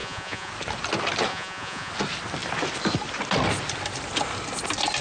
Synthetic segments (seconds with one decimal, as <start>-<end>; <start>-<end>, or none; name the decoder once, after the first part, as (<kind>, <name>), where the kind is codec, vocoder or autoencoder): 0.0-0.5 (vocoder, Vocos); 1.3-1.9